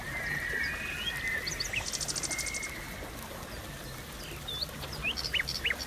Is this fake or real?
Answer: real